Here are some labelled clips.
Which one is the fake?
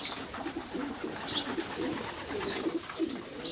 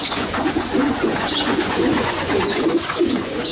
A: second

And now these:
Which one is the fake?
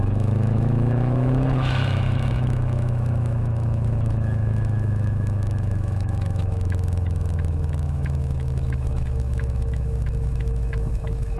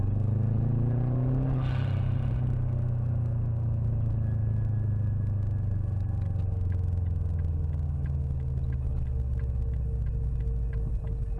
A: first